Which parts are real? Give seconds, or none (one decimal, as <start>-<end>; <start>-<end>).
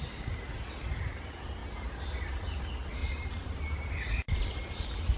0.0-1.6; 2.6-3.0; 3.9-5.2